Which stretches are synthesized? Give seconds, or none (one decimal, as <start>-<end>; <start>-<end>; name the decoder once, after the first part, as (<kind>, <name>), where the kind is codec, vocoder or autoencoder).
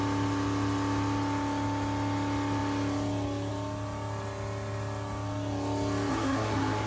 6.1-6.9 (codec, SNAC)